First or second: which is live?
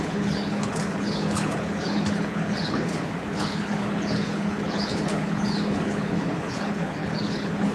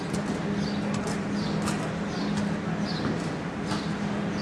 second